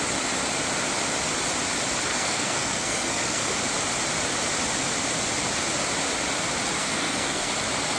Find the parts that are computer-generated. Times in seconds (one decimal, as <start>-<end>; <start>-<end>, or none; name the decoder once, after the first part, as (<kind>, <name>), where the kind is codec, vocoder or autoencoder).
2.1-3.5 (codec, SNAC); 6.8-7.5